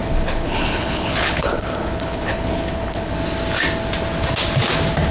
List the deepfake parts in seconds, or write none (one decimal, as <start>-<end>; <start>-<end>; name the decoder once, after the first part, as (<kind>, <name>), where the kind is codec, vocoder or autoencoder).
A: 0.0-3.1 (codec, HILCodec)

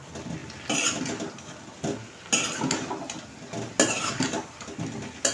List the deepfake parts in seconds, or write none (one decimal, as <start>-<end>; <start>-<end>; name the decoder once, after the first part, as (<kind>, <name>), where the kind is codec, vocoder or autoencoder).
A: none